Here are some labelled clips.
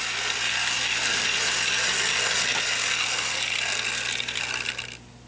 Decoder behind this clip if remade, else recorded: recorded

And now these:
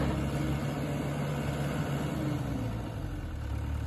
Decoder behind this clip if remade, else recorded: recorded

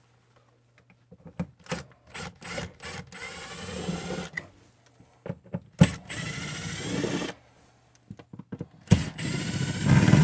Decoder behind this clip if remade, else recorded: recorded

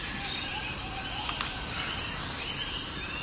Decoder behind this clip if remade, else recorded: recorded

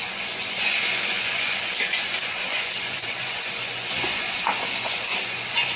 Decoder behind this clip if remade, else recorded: remade, vocoder, Vocos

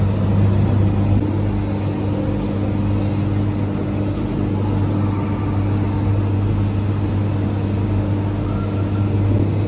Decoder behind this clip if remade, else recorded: recorded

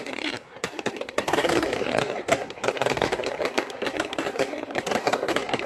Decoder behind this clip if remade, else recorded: remade, codec, SNAC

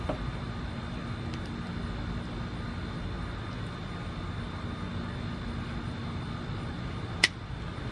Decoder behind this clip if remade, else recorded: recorded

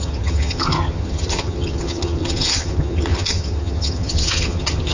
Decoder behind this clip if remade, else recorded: remade, vocoder, HiFi-GAN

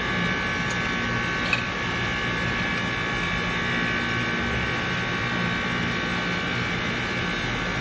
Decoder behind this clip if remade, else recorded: recorded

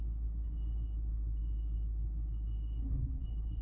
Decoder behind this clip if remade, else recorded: remade, codec, HILCodec